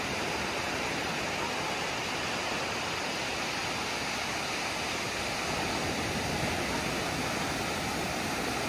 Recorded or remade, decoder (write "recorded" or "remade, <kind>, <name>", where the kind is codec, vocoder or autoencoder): recorded